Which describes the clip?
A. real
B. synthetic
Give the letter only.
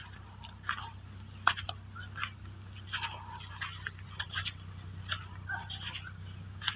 A